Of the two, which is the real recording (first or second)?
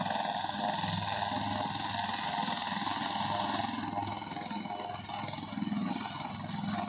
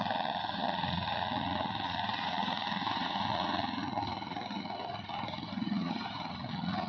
first